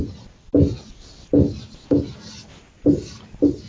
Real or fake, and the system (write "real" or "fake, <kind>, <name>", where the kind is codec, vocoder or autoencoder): real